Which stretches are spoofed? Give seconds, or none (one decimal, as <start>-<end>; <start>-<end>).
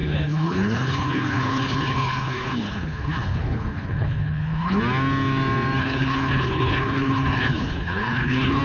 0.0-4.8; 5.8-8.6